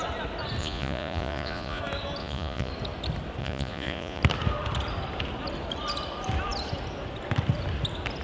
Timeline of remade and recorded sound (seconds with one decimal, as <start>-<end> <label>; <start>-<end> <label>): 0.0-0.6 recorded; 0.6-1.8 remade; 1.8-2.2 recorded; 2.2-2.7 remade; 2.7-3.4 recorded; 3.4-4.2 remade; 4.2-8.2 recorded